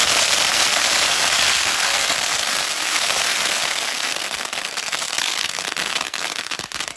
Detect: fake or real fake